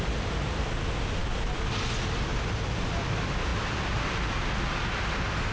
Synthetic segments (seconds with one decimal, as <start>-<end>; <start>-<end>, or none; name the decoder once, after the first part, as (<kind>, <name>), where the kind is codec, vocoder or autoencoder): none

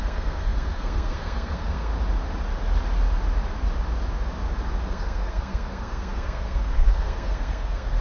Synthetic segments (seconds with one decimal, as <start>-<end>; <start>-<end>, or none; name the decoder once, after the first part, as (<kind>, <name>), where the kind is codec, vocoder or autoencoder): 0.0-1.9 (codec, SNAC); 4.9-8.0

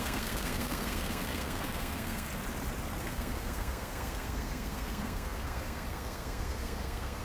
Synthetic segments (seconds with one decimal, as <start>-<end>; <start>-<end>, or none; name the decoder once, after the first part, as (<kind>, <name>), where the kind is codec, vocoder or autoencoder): 0.0-2.3 (codec, SNAC); 3.0-7.2

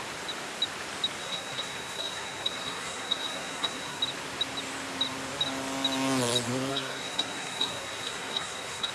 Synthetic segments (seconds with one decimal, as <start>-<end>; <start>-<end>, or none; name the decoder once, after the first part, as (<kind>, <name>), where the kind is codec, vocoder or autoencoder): 1.2-4.0 (codec, SNAC); 6.7-8.9